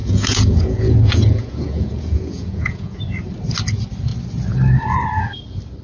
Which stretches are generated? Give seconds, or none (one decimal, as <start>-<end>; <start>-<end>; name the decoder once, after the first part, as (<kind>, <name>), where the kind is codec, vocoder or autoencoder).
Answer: 0.0-3.0 (vocoder, Vocos)